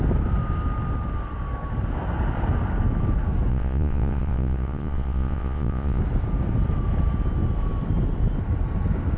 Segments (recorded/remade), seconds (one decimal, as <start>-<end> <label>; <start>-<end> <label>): 0.0-3.5 recorded; 3.5-6.0 remade; 6.0-9.2 recorded